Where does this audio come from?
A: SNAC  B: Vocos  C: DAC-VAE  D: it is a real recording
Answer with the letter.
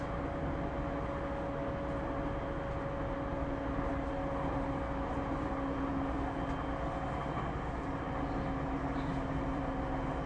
D